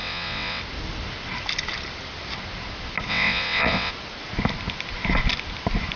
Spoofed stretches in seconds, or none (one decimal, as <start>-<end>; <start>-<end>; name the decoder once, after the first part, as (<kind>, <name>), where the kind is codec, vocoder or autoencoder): 0.0-0.6 (vocoder, WaveNeXt); 3.1-3.9